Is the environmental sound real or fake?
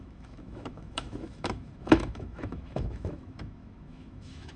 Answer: fake